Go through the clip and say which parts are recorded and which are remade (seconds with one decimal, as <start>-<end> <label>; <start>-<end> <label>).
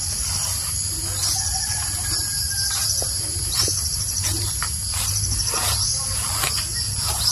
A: 0.0-1.5 recorded; 1.5-5.9 remade; 5.9-7.3 recorded